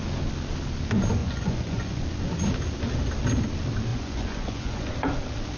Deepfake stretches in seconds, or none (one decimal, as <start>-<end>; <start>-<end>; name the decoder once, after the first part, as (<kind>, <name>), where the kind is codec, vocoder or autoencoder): 1.2-2.0 (vocoder, Vocos); 3.9-4.9